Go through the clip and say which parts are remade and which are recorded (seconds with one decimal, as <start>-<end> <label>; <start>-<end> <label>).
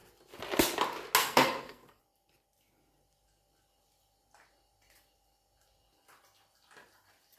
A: 0.0-1.2 recorded; 1.2-2.0 remade; 2.0-7.4 recorded